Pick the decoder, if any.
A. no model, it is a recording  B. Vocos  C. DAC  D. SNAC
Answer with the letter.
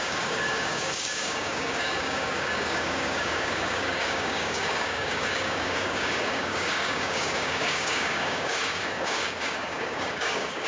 C